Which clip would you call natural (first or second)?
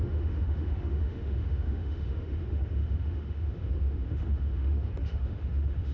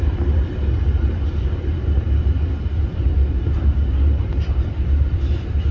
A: second